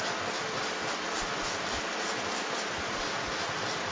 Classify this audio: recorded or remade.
recorded